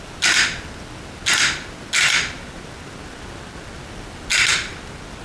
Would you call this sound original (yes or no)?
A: yes